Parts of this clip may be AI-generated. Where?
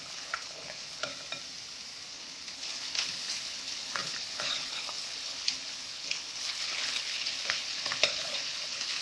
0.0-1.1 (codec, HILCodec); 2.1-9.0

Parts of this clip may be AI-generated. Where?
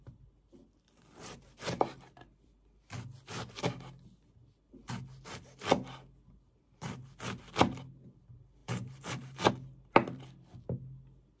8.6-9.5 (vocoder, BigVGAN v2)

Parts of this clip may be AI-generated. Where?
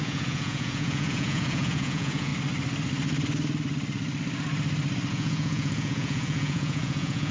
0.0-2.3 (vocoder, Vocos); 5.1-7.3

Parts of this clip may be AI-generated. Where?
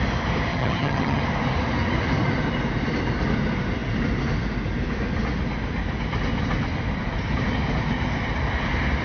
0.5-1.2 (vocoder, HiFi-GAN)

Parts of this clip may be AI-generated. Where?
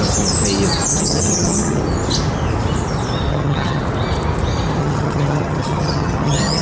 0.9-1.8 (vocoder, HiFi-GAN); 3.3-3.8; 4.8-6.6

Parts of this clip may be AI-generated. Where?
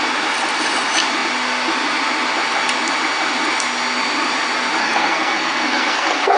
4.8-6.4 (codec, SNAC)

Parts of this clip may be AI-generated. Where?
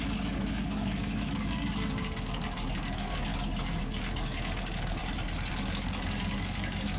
0.0-3.3 (codec, DAC); 3.8-5.0; 5.5-7.0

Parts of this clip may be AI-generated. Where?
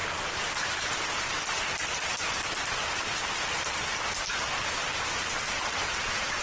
5.2-5.8 (vocoder, BigVGAN v2)